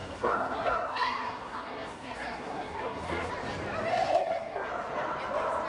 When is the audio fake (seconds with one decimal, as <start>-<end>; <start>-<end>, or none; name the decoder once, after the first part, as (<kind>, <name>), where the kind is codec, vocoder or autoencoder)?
0.0-3.3 (codec, SNAC); 3.9-4.7